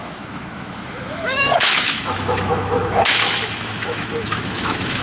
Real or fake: fake